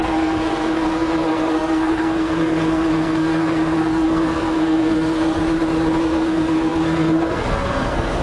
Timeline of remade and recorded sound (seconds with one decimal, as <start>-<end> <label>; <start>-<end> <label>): 0.0-5.4 remade; 5.4-6.0 recorded; 6.0-8.2 remade